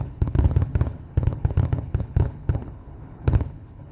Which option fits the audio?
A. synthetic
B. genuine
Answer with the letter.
A